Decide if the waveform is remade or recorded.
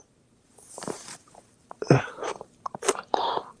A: remade